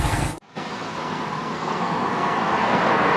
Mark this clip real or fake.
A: fake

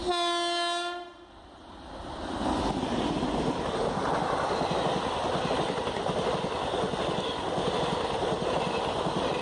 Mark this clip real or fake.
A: real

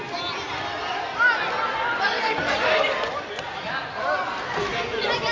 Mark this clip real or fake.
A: real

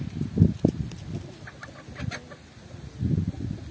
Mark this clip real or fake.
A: real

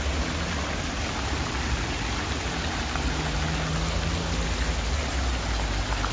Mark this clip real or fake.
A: real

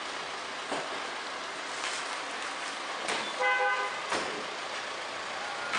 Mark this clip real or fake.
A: real